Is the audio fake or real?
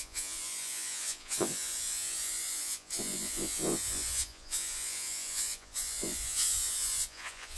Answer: fake